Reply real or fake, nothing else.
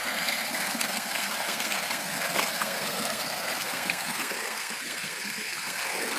fake